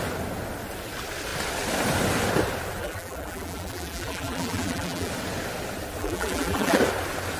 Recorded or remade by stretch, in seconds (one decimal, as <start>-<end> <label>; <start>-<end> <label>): 0.0-2.8 recorded; 2.8-5.1 remade; 5.1-6.0 recorded; 6.0-6.8 remade; 6.8-7.4 recorded

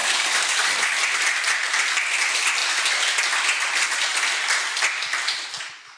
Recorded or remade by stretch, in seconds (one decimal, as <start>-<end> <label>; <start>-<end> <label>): 0.0-0.9 remade; 0.9-6.0 recorded

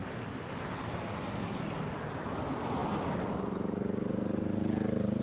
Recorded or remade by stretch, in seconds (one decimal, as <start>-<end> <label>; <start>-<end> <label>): 0.0-0.6 remade; 0.6-5.2 recorded

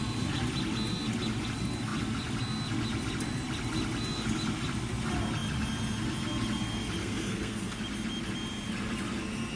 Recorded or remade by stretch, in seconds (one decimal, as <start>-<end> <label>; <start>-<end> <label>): 0.0-7.0 recorded; 7.0-7.6 remade; 7.6-9.6 recorded

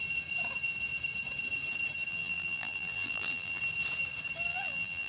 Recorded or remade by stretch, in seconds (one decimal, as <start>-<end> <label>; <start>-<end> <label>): 0.0-2.1 recorded; 2.1-3.6 remade; 3.6-4.5 recorded; 4.5-5.1 remade